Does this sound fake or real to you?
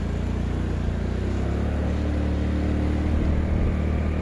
real